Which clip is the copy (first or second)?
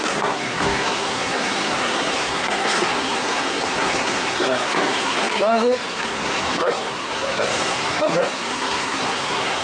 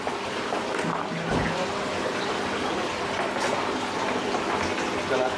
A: first